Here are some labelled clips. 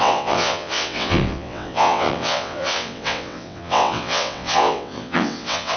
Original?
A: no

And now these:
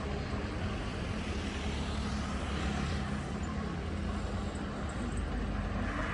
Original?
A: yes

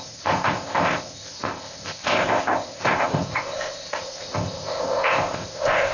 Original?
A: no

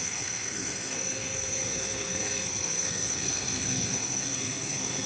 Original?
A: no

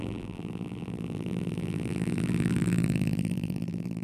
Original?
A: no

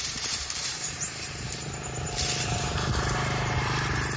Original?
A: no